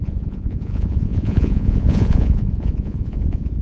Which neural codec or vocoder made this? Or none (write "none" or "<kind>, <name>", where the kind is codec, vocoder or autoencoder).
vocoder, Vocos